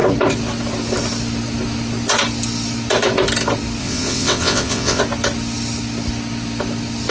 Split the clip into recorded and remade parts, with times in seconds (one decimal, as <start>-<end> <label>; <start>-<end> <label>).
0.0-3.8 recorded; 3.8-5.0 remade; 5.0-7.1 recorded

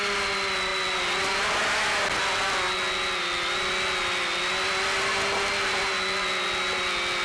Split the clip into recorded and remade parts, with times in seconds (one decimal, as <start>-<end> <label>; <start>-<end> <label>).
0.0-7.2 recorded

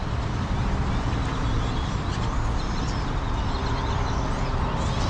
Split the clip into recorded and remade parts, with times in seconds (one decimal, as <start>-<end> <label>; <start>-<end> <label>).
0.0-5.1 recorded

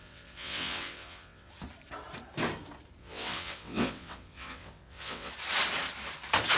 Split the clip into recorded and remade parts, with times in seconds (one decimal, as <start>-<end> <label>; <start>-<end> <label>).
0.0-1.5 remade; 1.5-3.0 recorded; 3.0-5.3 remade; 5.3-6.6 recorded

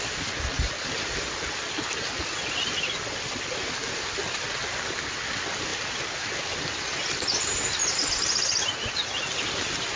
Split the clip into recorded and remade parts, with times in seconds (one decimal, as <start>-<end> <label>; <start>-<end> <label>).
0.0-10.0 recorded

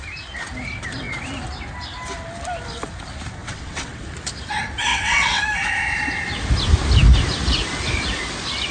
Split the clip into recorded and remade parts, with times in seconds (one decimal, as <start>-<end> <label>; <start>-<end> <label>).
0.0-3.4 recorded; 3.4-4.0 remade; 4.0-4.9 recorded; 4.9-5.4 remade; 5.4-8.7 recorded

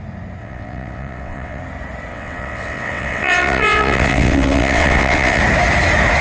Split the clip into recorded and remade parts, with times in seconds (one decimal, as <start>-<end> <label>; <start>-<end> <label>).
0.0-0.4 recorded; 0.4-1.6 remade; 1.6-2.1 recorded; 2.1-5.4 remade; 5.4-6.2 recorded

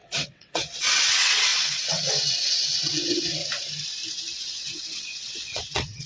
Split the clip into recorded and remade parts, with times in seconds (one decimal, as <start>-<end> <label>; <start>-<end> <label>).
0.0-3.4 remade; 3.4-4.4 recorded; 4.4-6.1 remade